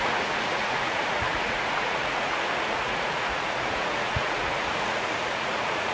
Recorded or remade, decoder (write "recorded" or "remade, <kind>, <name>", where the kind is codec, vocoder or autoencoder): remade, vocoder, Vocos